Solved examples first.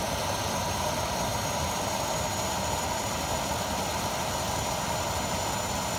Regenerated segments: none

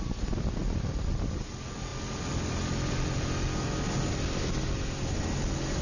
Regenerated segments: none

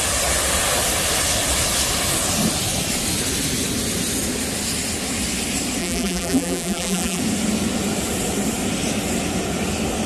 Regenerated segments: 5.8-7.2 (vocoder, BigVGAN v2)

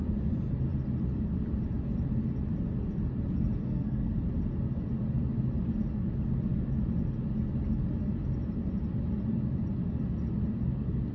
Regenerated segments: 3.6-4.2 (codec, SNAC)